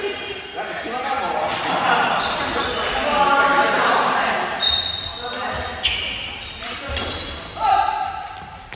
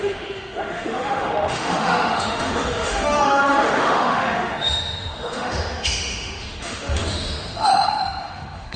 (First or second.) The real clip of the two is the first